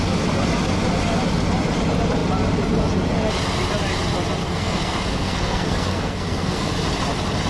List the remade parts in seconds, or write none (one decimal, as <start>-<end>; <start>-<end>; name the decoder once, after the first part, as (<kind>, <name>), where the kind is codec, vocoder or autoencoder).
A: 4.4-6.7 (codec, SNAC)